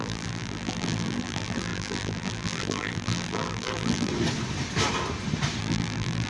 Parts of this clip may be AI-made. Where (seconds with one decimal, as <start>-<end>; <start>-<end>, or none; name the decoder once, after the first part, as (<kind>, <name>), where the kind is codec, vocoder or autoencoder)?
0.0-4.1 (vocoder, BigVGAN v2); 5.6-6.3